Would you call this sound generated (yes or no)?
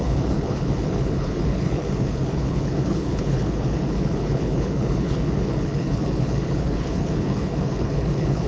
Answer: yes